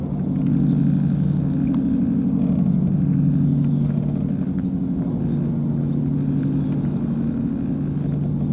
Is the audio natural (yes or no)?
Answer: yes